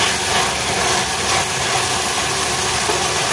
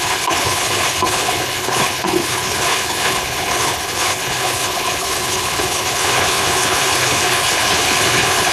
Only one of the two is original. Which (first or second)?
first